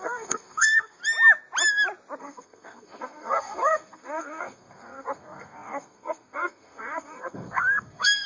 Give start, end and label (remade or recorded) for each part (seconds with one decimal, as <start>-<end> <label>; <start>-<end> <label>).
0.0-1.0 remade; 1.0-2.2 recorded; 2.2-8.3 remade